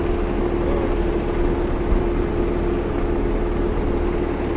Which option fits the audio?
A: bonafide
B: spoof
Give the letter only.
A